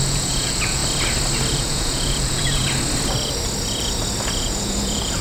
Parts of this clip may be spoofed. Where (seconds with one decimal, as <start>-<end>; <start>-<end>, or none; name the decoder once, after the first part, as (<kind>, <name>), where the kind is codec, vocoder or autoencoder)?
0.0-0.8 (vocoder, Vocos); 1.5-2.6; 4.4-5.2